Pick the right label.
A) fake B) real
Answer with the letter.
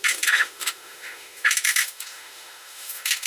A